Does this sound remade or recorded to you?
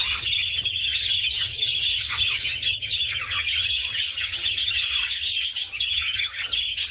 remade